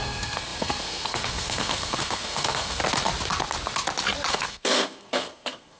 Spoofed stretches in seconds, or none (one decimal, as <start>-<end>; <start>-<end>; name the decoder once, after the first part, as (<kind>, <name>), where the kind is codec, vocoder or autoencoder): 0.0-2.8 (codec, SNAC); 4.3-5.8